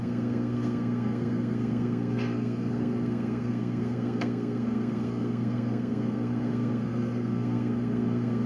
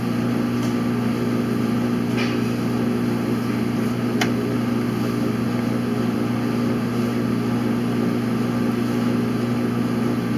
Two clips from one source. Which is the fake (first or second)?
first